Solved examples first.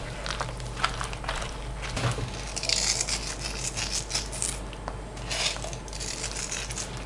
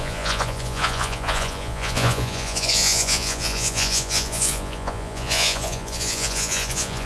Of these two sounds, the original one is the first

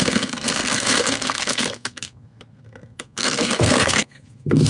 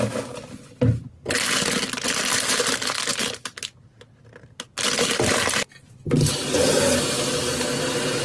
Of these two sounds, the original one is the second